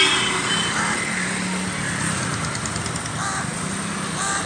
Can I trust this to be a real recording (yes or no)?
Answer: yes